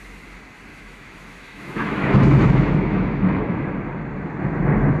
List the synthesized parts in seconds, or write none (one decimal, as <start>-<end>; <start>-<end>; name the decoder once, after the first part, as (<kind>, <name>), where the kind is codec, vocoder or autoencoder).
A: 0.7-3.7 (autoencoder, DAC-VAE)